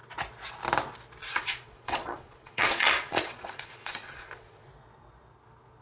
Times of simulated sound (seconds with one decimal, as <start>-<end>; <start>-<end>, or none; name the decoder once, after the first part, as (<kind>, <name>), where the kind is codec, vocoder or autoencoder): 1.2-4.7 (vocoder, Vocos)